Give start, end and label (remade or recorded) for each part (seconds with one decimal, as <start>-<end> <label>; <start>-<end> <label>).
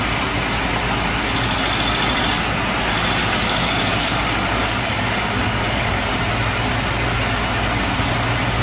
0.0-3.2 recorded; 3.2-6.1 remade; 6.1-8.6 recorded